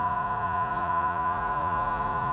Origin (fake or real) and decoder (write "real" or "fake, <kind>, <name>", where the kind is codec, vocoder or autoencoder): fake, vocoder, Vocos